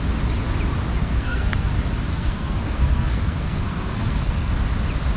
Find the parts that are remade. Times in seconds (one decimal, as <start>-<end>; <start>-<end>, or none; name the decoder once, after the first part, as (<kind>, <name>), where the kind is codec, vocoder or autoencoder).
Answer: 1.0-1.7 (codec, SNAC); 2.1-4.5

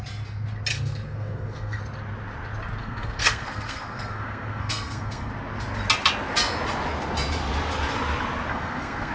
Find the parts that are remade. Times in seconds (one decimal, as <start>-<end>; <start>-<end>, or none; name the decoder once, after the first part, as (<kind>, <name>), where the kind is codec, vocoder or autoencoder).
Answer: 0.7-1.8 (codec, SNAC); 2.8-5.3; 8.5-9.1

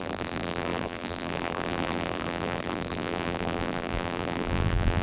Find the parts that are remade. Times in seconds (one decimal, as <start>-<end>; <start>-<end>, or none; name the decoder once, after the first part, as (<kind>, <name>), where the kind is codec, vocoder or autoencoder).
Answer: 0.0-5.0 (vocoder, BigVGAN v2)

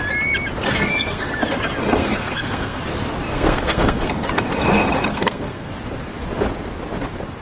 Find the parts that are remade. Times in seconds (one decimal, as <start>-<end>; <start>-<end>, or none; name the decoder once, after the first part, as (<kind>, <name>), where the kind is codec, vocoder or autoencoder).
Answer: 0.7-1.3 (codec, SNAC); 2.0-2.8; 3.3-4.1; 5.1-5.7

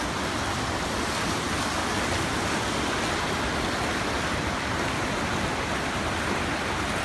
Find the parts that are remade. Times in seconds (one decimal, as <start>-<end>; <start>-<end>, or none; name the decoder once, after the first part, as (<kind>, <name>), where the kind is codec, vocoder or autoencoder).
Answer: none

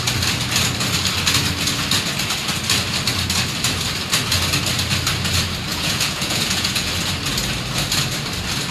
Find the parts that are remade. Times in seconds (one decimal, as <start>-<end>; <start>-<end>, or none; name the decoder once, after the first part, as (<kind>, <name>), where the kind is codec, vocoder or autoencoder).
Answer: 5.7-6.9 (vocoder, Vocos)